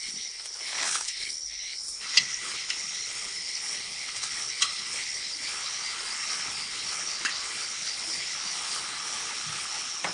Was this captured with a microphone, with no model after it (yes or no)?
no